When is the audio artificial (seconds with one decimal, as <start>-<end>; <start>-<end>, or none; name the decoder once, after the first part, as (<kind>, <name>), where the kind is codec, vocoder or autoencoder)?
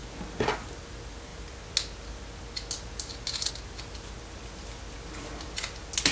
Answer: none